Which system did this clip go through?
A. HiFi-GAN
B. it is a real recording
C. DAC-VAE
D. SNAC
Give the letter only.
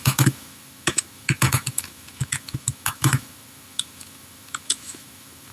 C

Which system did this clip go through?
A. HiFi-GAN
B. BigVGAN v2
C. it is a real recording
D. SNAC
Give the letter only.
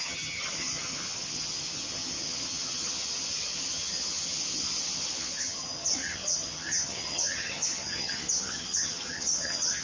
A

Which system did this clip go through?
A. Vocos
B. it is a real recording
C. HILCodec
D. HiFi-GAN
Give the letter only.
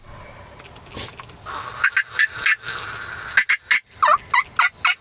B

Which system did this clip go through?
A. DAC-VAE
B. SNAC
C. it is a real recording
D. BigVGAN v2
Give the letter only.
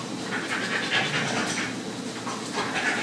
C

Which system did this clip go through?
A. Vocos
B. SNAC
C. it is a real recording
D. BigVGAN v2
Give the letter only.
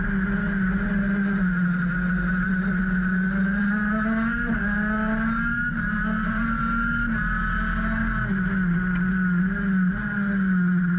C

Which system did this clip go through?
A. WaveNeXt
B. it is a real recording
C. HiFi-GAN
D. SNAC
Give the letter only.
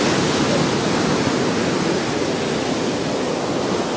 B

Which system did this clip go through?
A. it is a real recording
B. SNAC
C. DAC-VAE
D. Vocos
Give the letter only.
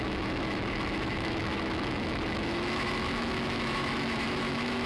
C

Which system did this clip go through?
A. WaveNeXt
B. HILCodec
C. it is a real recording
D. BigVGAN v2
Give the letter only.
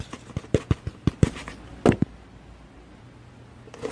C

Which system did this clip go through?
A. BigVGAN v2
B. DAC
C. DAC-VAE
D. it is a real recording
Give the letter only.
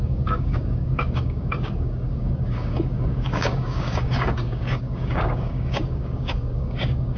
B